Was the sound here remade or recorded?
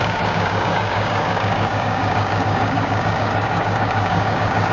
remade